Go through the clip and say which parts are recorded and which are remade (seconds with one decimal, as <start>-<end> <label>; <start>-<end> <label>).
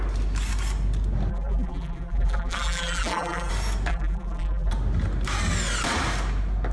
0.0-1.3 recorded; 1.3-3.5 remade; 3.5-3.9 recorded; 3.9-4.7 remade; 4.7-6.7 recorded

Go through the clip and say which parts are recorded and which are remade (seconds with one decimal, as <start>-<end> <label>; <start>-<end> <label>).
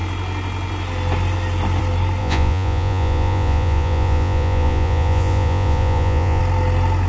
0.0-2.2 recorded; 2.2-6.4 remade; 6.4-7.1 recorded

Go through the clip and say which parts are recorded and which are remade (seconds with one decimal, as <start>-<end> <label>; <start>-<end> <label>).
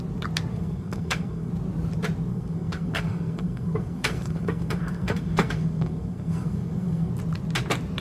0.0-0.5 recorded; 0.5-1.5 remade; 1.5-2.3 recorded; 2.3-7.1 remade; 7.1-8.0 recorded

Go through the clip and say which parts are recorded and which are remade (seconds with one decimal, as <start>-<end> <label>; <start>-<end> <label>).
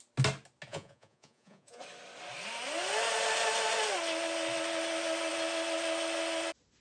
0.0-0.7 recorded; 0.7-1.8 remade; 1.8-6.8 recorded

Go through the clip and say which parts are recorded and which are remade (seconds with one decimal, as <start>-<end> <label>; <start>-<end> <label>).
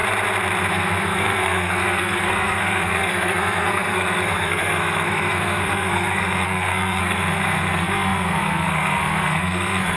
0.0-0.7 recorded; 0.7-10.0 remade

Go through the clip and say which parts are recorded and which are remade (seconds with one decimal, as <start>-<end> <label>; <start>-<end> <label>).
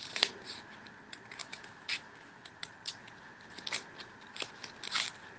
0.0-1.4 recorded; 1.4-2.5 remade; 2.5-5.4 recorded